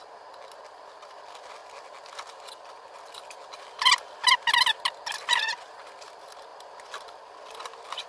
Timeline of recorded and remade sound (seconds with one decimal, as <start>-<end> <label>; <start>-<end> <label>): 0.0-8.1 recorded